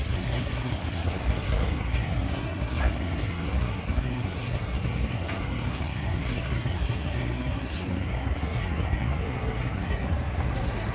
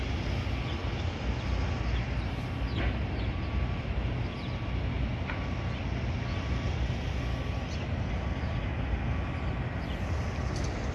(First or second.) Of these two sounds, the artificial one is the first